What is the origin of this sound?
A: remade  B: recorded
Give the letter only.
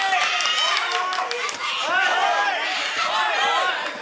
B